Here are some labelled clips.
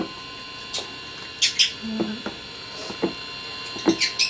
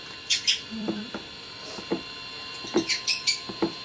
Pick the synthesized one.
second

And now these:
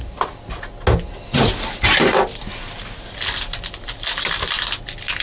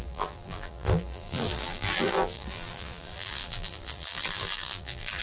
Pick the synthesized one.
second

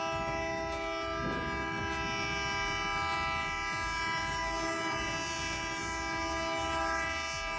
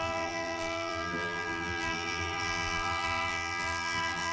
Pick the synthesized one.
second